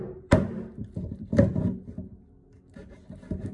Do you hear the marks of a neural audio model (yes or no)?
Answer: no